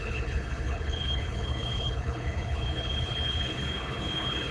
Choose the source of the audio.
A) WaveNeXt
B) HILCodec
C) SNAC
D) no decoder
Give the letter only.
B